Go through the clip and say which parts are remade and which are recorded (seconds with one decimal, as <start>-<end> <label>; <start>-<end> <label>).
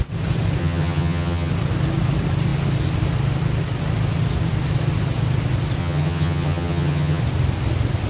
0.0-0.6 recorded; 0.6-1.5 remade; 1.5-5.8 recorded; 5.8-7.2 remade; 7.2-8.1 recorded